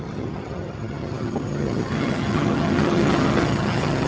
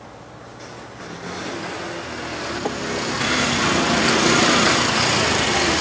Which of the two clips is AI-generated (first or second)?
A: first